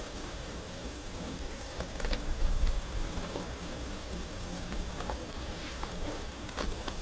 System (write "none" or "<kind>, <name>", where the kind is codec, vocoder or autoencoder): codec, DAC